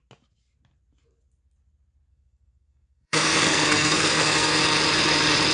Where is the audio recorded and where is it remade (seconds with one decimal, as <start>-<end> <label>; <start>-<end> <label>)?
0.0-2.1 recorded; 2.1-4.6 remade; 4.6-5.5 recorded